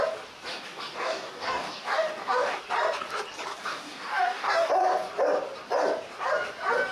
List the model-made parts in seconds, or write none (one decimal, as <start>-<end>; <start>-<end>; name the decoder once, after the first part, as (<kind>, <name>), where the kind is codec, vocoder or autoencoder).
0.5-2.6 (codec, DAC); 3.5-4.7